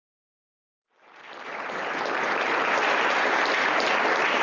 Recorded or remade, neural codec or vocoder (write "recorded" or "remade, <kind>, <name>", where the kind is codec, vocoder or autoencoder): recorded